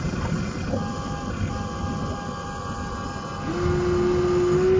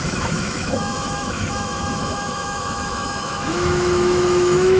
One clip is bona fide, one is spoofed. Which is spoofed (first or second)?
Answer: second